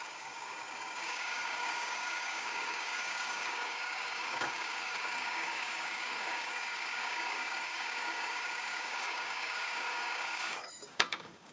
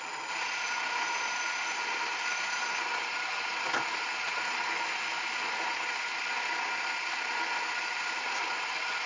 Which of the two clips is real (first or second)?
second